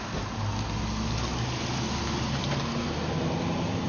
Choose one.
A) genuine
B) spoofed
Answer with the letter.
A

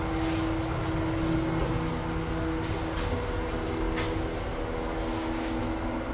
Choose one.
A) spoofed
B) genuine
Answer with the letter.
B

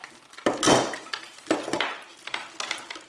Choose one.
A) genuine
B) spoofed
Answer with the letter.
A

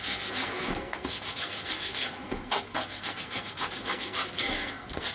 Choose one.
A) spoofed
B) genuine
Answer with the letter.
A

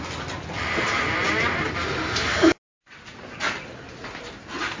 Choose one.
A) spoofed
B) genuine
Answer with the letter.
B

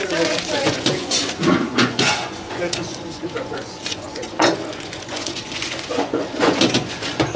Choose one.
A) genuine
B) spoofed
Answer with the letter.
B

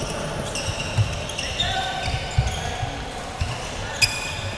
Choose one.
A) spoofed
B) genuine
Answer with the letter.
B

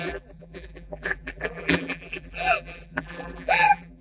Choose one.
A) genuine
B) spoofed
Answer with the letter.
B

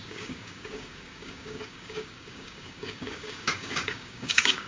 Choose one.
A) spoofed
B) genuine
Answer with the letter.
A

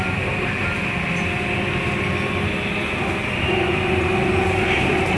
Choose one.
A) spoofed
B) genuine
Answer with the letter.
B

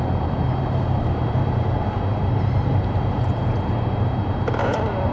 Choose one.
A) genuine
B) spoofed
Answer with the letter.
B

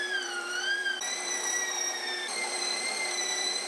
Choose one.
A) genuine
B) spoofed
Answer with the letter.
B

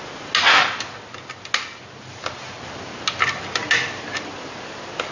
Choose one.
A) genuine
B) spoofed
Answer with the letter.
A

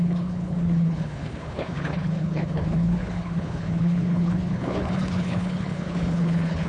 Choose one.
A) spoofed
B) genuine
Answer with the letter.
A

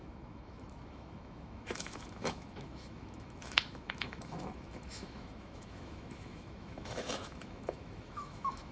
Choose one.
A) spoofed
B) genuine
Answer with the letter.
A